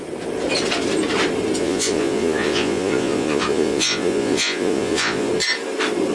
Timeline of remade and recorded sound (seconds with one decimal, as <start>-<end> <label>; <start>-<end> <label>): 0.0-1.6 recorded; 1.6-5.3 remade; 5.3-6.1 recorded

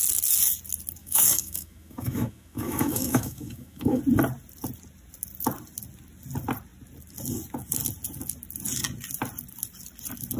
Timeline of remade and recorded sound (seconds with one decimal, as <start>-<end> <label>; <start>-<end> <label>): 0.0-1.0 recorded; 1.0-4.0 remade; 4.0-10.4 recorded

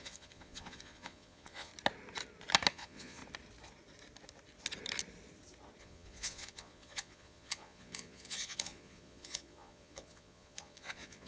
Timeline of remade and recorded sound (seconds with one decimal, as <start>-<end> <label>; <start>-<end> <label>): 0.0-1.7 remade; 1.7-2.7 recorded; 2.7-3.2 remade; 3.2-5.8 recorded; 5.8-11.3 remade

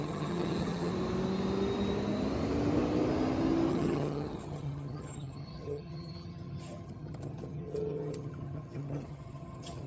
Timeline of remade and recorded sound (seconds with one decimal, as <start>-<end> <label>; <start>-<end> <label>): 0.0-0.9 remade; 0.9-3.7 recorded; 3.7-9.9 remade

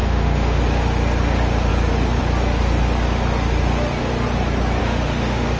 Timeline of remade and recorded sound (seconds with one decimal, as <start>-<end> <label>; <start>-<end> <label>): 0.0-0.6 remade; 0.6-4.8 recorded; 4.8-5.6 remade

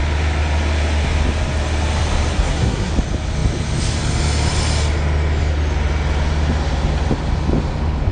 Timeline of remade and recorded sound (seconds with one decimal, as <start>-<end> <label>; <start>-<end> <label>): 0.0-2.3 recorded; 2.3-2.9 remade; 2.9-8.1 recorded

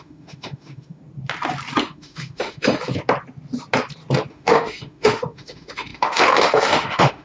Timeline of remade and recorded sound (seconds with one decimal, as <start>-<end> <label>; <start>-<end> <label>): 0.0-1.0 remade; 1.0-1.8 recorded; 1.8-2.8 remade; 2.8-4.3 recorded; 4.3-7.2 remade

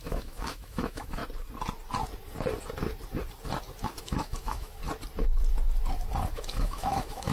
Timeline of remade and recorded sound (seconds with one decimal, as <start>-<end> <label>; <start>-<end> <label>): 0.0-1.2 remade; 1.2-4.0 recorded; 4.0-4.8 remade; 4.8-6.3 recorded; 6.3-7.3 remade